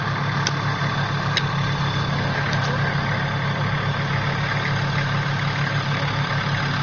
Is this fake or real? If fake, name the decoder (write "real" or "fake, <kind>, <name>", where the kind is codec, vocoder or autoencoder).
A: real